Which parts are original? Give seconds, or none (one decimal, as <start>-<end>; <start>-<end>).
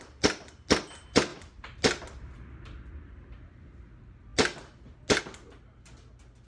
0.0-6.5